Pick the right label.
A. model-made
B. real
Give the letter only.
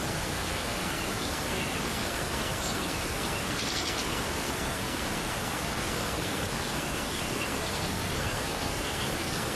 A